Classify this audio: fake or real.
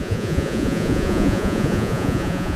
fake